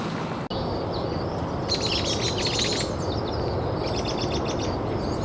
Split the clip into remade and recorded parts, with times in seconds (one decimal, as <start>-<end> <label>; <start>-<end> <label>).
0.0-5.2 recorded